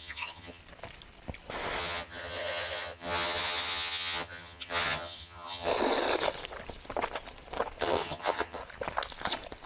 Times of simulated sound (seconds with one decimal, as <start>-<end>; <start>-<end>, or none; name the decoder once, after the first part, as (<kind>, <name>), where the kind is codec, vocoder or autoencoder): 0.0-0.6 (vocoder, HiFi-GAN); 1.8-5.7; 7.8-8.6